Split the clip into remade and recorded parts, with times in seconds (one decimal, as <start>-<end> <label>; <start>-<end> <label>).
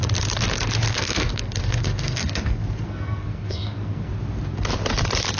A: 0.0-0.9 recorded; 0.9-4.1 remade; 4.1-5.4 recorded